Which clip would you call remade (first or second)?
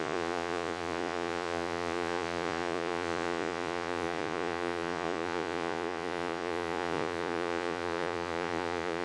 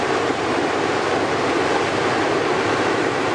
first